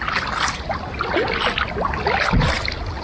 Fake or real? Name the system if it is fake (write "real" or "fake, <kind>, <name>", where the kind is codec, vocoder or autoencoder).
real